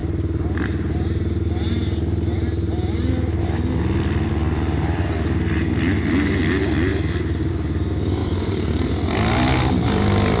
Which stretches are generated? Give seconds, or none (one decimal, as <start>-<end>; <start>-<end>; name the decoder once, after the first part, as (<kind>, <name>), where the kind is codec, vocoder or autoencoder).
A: 8.2-8.9 (vocoder, BigVGAN v2)